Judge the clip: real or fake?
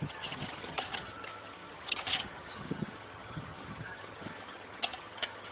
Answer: fake